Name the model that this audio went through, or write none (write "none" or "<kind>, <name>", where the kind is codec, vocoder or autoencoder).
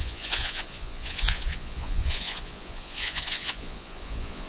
vocoder, Vocos